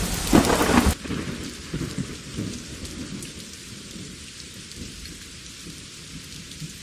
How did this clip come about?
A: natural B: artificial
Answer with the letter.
B